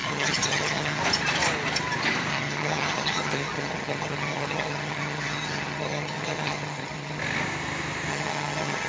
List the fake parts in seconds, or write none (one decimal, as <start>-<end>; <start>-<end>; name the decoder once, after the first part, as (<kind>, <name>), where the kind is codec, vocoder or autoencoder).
0.0-1.0 (vocoder, HiFi-GAN); 2.3-7.2; 8.1-8.9